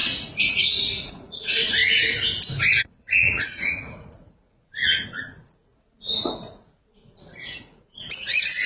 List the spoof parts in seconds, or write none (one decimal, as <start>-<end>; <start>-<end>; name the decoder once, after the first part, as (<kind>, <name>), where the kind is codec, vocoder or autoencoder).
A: 0.0-1.8 (vocoder, Vocos); 2.7-8.7